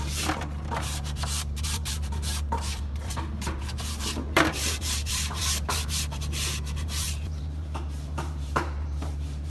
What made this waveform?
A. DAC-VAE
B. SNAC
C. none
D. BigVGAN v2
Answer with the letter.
D